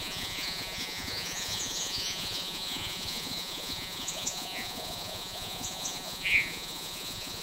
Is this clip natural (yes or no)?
no